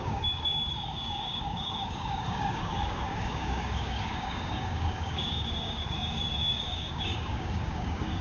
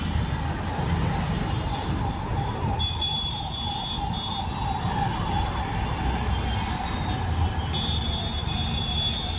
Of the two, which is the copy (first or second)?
first